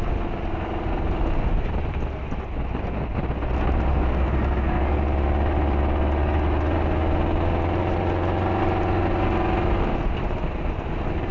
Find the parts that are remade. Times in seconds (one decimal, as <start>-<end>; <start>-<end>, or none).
3.9-5.0